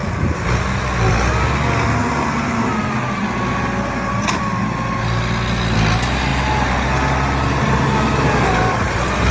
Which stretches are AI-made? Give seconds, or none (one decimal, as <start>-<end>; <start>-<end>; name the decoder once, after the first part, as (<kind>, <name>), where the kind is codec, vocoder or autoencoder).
none